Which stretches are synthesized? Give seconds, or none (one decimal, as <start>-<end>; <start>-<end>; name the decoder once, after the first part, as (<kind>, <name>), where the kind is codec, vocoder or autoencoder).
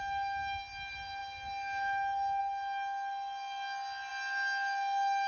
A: none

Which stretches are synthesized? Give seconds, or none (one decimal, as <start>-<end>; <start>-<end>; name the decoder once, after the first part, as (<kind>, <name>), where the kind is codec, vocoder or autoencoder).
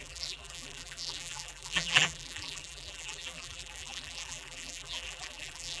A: 0.0-5.8 (vocoder, BigVGAN v2)